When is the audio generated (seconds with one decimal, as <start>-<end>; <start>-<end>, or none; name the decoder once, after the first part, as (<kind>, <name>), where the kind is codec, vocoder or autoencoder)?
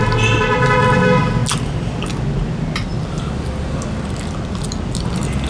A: none